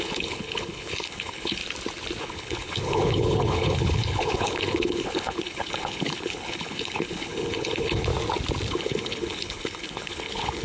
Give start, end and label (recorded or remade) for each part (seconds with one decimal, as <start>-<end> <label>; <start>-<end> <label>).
0.0-1.6 remade; 1.6-2.2 recorded; 2.2-8.1 remade; 8.1-8.7 recorded; 8.7-10.6 remade